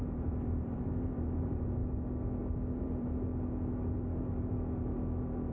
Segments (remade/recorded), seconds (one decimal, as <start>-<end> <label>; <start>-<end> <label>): 0.0-1.8 remade; 1.8-2.8 recorded; 2.8-3.3 remade; 3.3-5.5 recorded